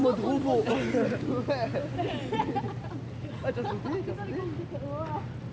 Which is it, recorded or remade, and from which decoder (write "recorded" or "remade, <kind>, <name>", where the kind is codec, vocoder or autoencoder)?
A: recorded